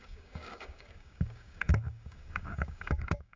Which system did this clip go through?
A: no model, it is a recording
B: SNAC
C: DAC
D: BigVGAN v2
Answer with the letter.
C